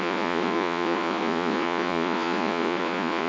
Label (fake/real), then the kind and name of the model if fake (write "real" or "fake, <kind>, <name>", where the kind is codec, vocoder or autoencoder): fake, vocoder, Vocos